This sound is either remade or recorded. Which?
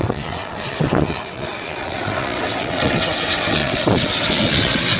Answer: remade